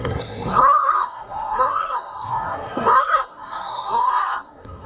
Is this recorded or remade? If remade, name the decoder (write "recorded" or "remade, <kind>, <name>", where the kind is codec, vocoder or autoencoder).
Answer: remade, codec, SNAC